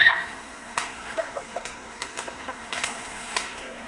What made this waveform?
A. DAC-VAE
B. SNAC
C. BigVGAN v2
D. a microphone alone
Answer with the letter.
B